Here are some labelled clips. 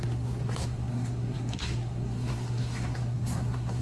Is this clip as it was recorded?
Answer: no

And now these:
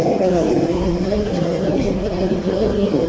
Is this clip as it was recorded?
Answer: no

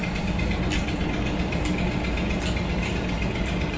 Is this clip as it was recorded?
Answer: yes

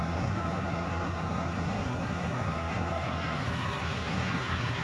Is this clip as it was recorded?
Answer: no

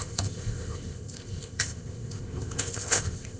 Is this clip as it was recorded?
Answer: no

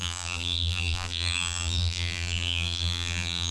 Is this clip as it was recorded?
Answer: no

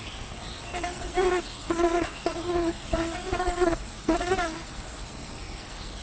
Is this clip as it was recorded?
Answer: no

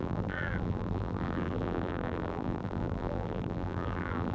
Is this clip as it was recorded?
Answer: no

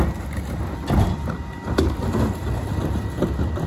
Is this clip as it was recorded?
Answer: yes